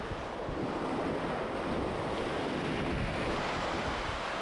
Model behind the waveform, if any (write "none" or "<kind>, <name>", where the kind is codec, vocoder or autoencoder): none